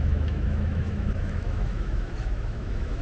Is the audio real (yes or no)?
no